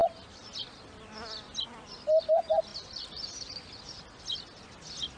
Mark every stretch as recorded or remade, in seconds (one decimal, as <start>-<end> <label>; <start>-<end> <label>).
0.0-5.2 recorded